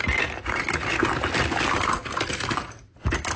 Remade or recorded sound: recorded